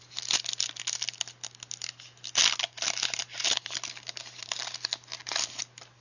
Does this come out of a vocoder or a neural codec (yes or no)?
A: no